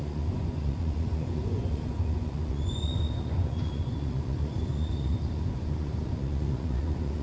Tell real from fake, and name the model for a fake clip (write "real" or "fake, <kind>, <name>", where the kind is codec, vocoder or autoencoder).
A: fake, vocoder, Vocos